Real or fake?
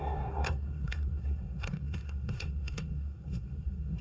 fake